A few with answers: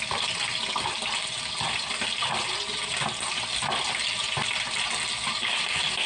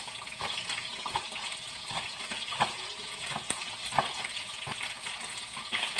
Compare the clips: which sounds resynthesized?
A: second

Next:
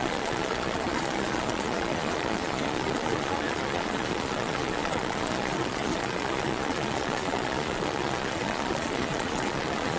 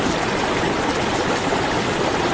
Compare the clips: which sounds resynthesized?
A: first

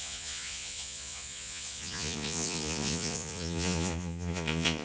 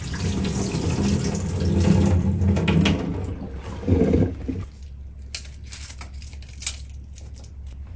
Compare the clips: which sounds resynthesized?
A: first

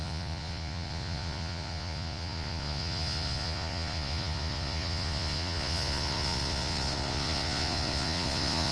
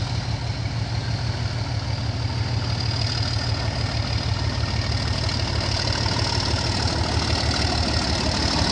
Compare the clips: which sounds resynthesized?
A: first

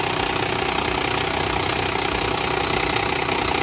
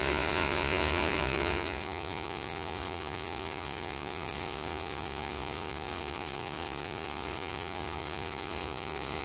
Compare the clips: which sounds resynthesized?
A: second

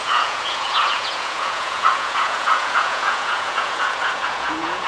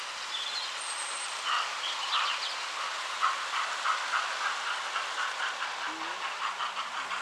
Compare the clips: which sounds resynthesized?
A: first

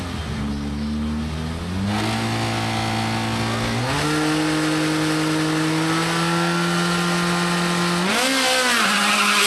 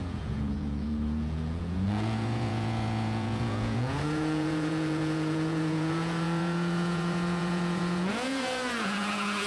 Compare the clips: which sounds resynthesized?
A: second